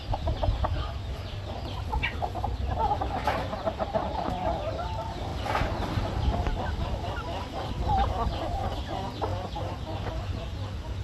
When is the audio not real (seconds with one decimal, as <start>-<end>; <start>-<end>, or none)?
5.3-8.3